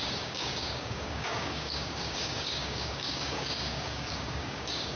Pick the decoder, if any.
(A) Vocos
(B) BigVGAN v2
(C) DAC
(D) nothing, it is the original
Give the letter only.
C